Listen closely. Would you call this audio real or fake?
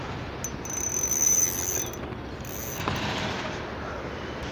real